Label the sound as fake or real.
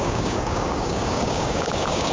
fake